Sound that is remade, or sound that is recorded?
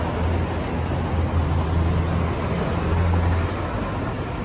recorded